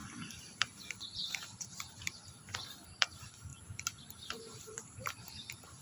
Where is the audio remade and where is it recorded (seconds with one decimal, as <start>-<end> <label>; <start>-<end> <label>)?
0.0-5.8 remade